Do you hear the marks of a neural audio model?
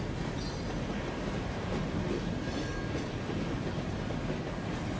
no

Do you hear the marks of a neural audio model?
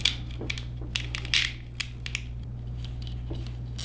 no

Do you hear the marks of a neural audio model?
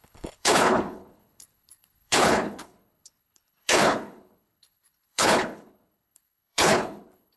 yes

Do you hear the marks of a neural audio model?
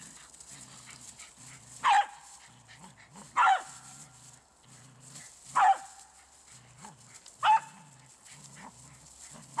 no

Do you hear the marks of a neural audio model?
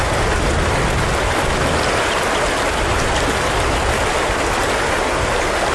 no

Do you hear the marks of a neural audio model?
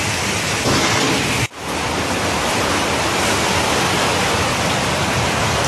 no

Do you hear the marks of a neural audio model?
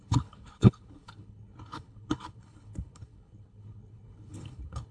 yes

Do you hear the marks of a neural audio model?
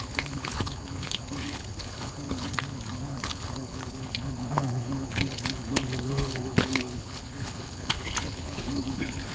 yes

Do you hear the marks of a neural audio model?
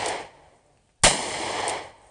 no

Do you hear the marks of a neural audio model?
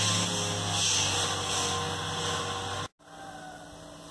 no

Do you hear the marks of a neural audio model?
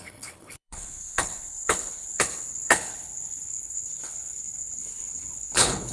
yes